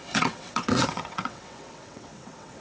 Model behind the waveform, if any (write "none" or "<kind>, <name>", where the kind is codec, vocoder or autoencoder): vocoder, WaveNeXt